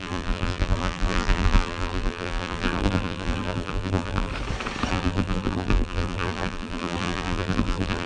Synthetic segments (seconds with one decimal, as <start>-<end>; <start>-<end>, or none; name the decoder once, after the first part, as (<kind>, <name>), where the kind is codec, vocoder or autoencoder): 0.0-4.3 (vocoder, BigVGAN v2); 4.9-8.1